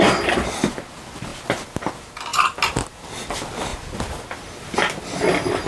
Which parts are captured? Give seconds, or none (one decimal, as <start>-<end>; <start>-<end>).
0.0-5.7